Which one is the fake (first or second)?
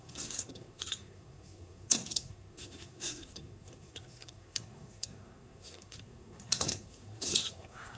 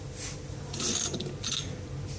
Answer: first